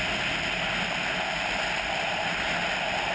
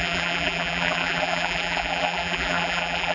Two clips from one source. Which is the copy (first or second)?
second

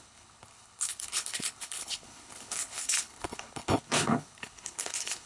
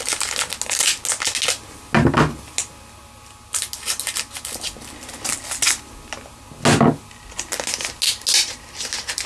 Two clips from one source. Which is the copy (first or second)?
first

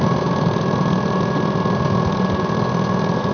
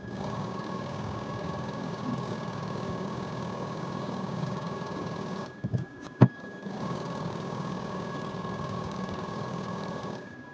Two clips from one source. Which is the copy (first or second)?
second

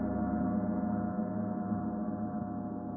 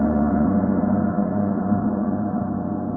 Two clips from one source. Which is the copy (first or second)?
second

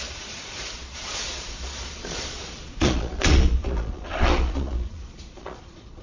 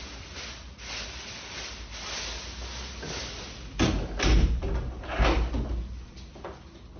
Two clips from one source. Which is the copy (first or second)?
first